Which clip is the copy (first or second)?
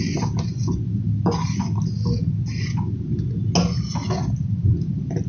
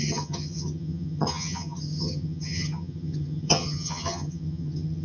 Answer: second